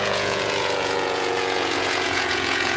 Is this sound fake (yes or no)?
yes